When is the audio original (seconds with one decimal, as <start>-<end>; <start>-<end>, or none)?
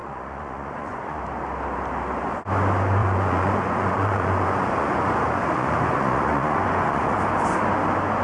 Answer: 1.2-3.0; 7.2-8.2